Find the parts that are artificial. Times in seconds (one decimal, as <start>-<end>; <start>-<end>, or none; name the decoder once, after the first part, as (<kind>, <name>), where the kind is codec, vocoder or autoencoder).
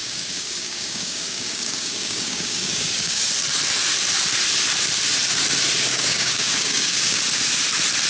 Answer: 0.0-3.3 (codec, DAC); 5.9-7.2